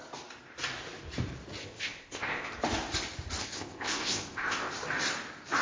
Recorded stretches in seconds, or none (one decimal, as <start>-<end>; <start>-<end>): 0.0-1.6; 2.5-3.4; 4.7-5.6